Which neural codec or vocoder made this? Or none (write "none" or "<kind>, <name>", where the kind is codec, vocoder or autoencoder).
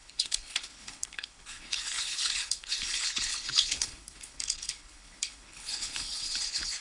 codec, HILCodec